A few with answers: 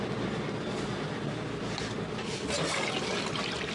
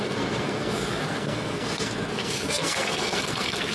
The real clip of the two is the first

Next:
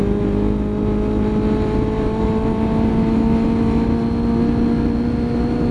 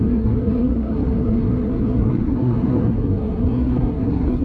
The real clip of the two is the first